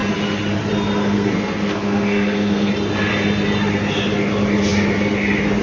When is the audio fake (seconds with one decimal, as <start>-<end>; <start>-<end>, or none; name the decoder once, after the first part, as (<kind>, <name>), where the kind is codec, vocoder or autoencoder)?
1.0-2.7 (codec, SNAC)